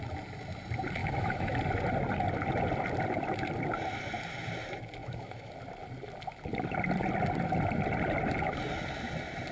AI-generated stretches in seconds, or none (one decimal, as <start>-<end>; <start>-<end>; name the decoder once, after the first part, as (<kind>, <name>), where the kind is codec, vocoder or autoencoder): 1.0-1.6 (autoencoder, DAC-VAE); 5.0-5.5